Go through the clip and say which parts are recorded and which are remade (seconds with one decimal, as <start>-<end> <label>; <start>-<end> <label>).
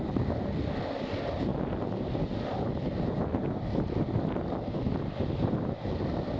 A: 0.0-6.4 recorded